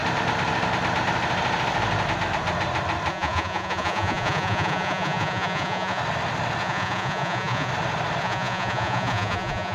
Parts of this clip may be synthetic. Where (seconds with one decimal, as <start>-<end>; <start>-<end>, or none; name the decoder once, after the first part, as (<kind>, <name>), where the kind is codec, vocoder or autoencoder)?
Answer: 3.1-6.0 (vocoder, Vocos); 6.6-7.7; 8.2-9.7